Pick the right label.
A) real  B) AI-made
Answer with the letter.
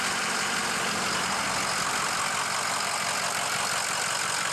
A